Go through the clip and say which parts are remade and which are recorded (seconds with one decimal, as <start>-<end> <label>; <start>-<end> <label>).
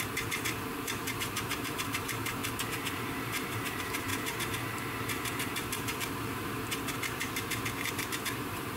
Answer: 0.0-2.4 remade; 2.4-2.9 recorded; 2.9-8.8 remade